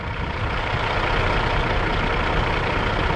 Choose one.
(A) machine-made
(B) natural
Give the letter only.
B